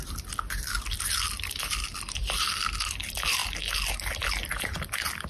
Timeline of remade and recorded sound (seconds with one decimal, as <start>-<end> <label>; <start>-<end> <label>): 0.0-3.4 remade; 3.4-4.3 recorded; 4.3-5.3 remade